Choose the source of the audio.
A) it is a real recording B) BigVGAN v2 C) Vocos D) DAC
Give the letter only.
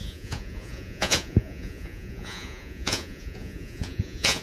C